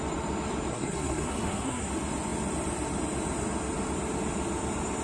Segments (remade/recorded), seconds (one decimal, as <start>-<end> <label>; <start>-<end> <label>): 0.0-0.7 recorded; 0.7-1.9 remade; 1.9-5.0 recorded

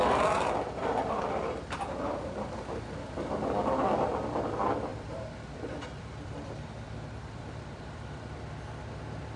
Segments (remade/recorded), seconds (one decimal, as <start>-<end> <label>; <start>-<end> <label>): 0.0-1.4 remade; 1.4-4.9 recorded; 4.9-8.2 remade; 8.2-9.4 recorded

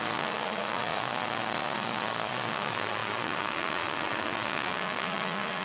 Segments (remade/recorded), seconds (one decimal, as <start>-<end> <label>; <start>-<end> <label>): 0.0-5.6 remade

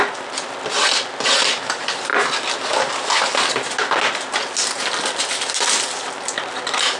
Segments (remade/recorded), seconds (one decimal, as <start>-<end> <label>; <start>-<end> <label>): 0.0-7.0 recorded

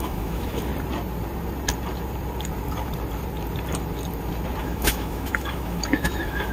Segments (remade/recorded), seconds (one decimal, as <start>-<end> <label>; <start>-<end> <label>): 0.0-0.7 remade; 0.7-4.6 recorded; 4.6-6.5 remade

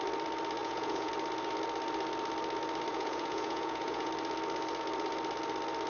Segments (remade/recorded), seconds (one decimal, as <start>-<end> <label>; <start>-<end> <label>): 0.0-0.6 recorded; 0.6-1.1 remade; 1.1-2.9 recorded; 2.9-4.1 remade; 4.1-5.9 recorded

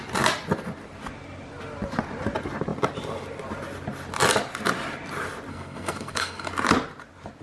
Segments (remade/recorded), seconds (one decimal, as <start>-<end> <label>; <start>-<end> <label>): 0.0-5.5 recorded; 5.5-6.5 remade; 6.5-7.4 recorded